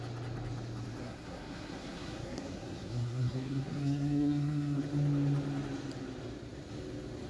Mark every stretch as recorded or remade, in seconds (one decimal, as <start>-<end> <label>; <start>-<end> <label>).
0.0-1.0 recorded; 1.0-4.8 remade; 4.8-7.3 recorded